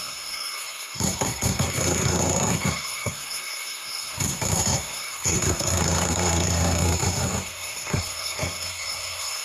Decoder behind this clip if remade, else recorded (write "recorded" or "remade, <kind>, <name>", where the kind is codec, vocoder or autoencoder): remade, codec, SNAC